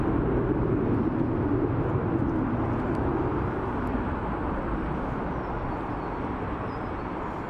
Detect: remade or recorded recorded